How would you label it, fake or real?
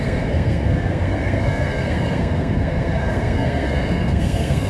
fake